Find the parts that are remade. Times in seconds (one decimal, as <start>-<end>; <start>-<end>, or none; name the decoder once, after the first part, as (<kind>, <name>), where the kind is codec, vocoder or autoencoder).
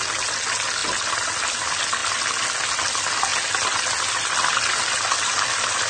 none